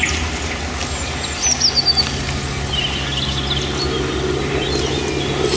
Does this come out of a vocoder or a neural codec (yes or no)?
no